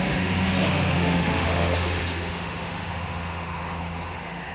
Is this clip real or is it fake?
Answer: fake